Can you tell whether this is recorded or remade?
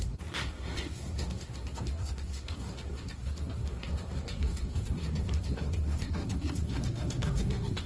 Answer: remade